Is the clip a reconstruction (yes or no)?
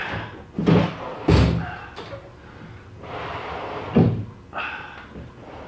no